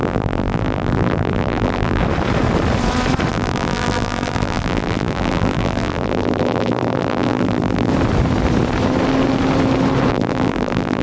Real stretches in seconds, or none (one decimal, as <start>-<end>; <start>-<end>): 2.0-3.3; 7.9-10.1